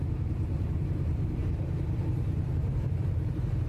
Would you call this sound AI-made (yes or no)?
yes